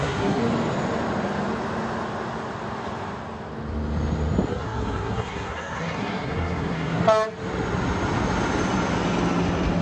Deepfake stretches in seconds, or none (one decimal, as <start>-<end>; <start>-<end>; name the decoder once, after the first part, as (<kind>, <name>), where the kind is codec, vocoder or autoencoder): 0.0-0.4 (codec, SNAC); 4.5-7.0